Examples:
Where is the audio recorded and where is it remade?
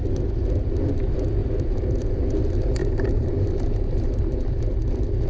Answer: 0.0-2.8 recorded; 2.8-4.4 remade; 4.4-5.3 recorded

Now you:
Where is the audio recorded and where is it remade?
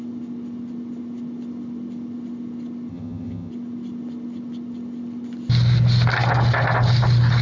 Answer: 0.0-2.9 recorded; 2.9-3.5 remade; 3.5-7.4 recorded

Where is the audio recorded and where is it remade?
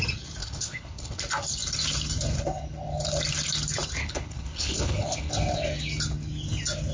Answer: 0.0-0.4 recorded; 0.4-1.2 remade; 1.2-4.0 recorded; 4.0-5.3 remade; 5.3-6.9 recorded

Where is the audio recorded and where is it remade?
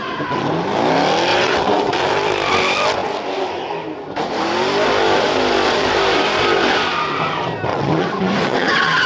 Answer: 0.0-1.3 recorded; 1.3-1.9 remade; 1.9-7.7 recorded; 7.7-9.1 remade